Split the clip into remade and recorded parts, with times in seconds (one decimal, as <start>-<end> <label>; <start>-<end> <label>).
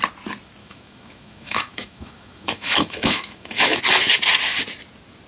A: 0.0-0.6 recorded; 0.6-3.8 remade; 3.8-5.3 recorded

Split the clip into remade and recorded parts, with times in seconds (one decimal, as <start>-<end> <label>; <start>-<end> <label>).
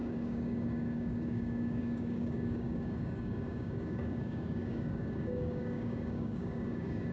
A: 0.0-7.1 remade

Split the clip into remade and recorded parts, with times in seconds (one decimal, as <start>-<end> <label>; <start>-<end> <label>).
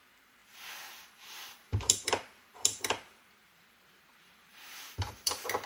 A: 0.0-0.4 remade; 0.4-1.0 recorded; 1.0-5.7 remade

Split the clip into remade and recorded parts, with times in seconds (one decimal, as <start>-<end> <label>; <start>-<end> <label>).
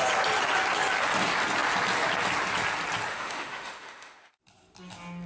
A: 0.0-3.1 recorded; 3.1-4.3 remade; 4.3-5.3 recorded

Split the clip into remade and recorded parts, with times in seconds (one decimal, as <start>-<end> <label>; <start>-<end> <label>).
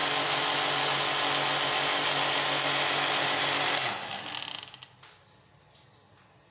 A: 0.0-6.5 recorded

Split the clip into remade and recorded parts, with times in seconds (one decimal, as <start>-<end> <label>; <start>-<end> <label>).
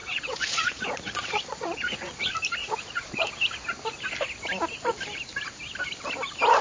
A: 0.0-2.2 remade; 2.2-2.6 recorded; 2.6-3.3 remade; 3.3-6.6 recorded